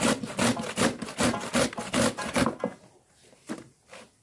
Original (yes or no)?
yes